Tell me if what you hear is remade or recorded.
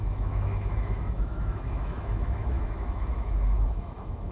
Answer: remade